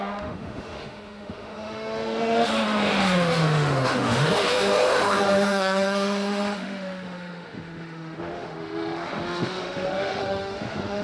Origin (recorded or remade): remade